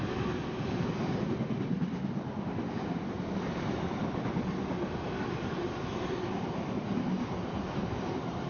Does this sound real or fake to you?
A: real